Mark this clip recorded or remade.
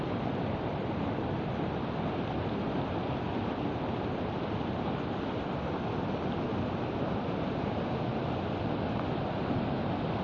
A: recorded